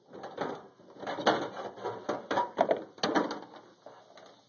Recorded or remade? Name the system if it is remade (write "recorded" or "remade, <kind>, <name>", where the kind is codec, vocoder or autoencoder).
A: recorded